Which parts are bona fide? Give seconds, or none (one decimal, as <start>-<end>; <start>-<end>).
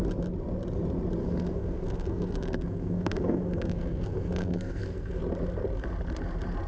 0.0-1.2; 5.2-6.7